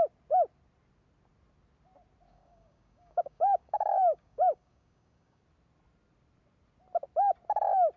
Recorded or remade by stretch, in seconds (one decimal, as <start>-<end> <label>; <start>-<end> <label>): 0.0-2.3 recorded; 2.3-5.4 remade; 5.4-8.0 recorded